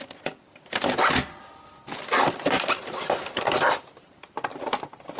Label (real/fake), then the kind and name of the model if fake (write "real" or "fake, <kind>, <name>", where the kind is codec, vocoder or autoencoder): real